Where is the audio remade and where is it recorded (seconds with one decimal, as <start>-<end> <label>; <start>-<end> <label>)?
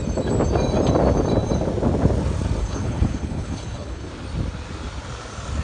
0.0-2.6 recorded; 2.6-4.1 remade; 4.1-5.6 recorded